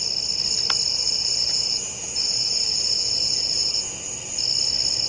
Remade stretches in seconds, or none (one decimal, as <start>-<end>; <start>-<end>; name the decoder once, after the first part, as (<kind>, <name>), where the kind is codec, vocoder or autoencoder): 0.9-4.0 (vocoder, Vocos)